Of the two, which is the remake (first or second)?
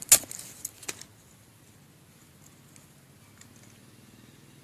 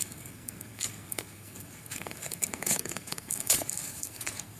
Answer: second